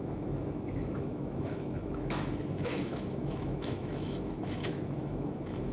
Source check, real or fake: fake